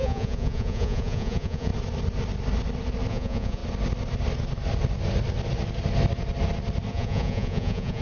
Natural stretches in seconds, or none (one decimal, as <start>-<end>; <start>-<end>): 1.7-3.1; 3.6-6.9